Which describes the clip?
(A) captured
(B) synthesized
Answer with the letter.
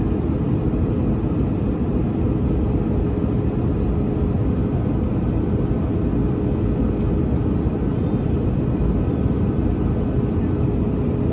A